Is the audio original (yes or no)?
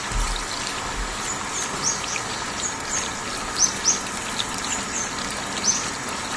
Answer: yes